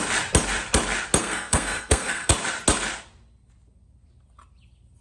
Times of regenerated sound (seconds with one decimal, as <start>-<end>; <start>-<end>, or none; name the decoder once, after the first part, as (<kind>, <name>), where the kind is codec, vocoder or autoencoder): 1.2-2.3 (codec, SNAC)